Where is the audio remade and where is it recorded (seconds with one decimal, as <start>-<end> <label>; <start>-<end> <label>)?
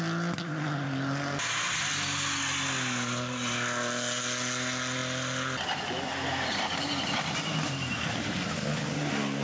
0.0-9.4 recorded